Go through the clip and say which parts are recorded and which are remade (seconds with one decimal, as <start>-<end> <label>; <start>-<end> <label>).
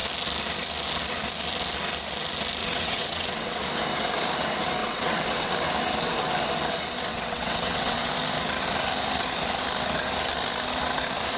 0.0-2.6 recorded; 2.6-3.6 remade; 3.6-4.8 recorded; 4.8-5.5 remade; 5.5-7.1 recorded; 7.1-8.1 remade; 8.1-11.4 recorded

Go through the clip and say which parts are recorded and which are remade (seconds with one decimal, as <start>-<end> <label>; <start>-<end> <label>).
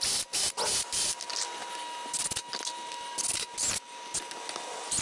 0.0-5.0 recorded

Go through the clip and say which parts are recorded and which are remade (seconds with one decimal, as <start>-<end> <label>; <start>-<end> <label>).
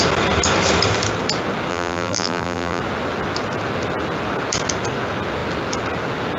0.0-1.7 recorded; 1.7-2.8 remade; 2.8-6.4 recorded